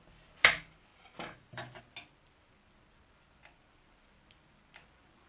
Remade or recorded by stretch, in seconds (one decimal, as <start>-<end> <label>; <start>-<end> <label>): 0.0-0.9 recorded; 0.9-1.8 remade; 1.8-5.3 recorded